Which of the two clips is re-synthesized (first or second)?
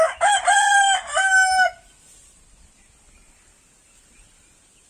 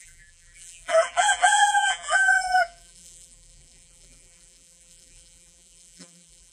second